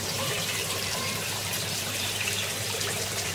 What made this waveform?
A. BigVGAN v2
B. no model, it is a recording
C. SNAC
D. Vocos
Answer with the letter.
A